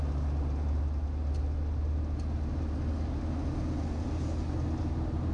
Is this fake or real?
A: real